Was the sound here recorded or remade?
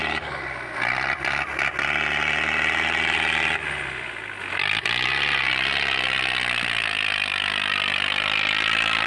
recorded